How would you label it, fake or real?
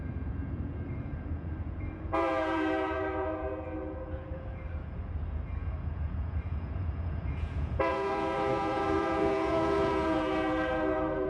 fake